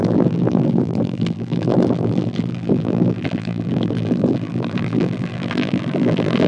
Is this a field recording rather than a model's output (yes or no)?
no